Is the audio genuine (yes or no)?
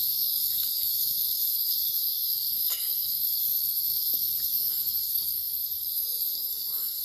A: no